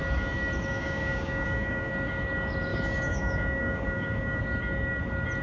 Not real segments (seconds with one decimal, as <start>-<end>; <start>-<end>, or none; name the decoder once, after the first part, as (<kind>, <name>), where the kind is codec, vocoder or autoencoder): 0.7-1.9 (codec, DAC); 2.7-4.4